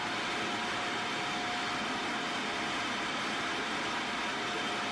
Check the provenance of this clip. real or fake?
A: real